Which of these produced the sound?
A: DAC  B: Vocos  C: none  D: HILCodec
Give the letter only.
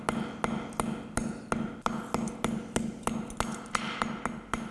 C